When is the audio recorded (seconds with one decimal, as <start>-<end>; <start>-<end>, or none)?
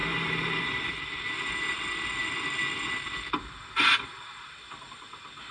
0.0-5.5